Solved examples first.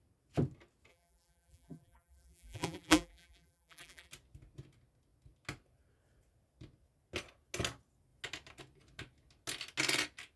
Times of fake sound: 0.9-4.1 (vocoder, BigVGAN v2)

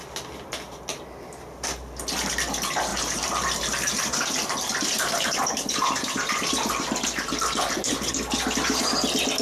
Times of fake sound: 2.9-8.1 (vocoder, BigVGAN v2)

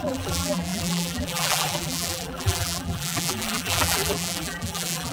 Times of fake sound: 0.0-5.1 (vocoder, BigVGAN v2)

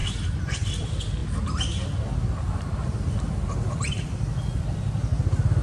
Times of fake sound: 0.7-1.2 (vocoder, BigVGAN v2); 4.6-5.6

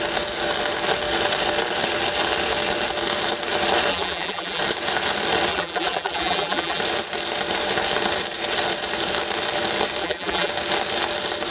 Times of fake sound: 3.9-4.6 (vocoder, BigVGAN v2); 5.5-6.8; 10.0-10.5

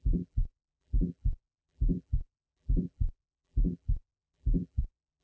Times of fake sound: 0.0-5.2 (vocoder, BigVGAN v2)